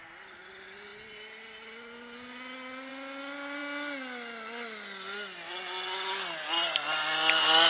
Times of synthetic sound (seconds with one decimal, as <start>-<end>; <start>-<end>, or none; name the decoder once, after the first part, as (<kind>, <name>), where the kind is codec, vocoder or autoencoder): none